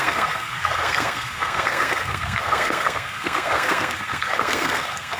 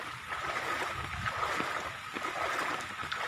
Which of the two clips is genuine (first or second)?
second